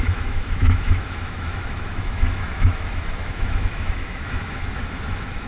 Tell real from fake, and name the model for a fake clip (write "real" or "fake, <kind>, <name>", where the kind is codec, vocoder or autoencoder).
fake, autoencoder, DAC-VAE